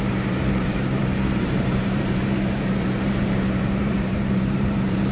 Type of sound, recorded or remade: remade